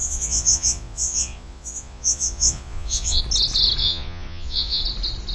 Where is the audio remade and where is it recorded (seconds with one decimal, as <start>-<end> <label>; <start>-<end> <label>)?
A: 0.0-3.2 remade; 3.2-3.8 recorded; 3.8-4.8 remade; 4.8-5.3 recorded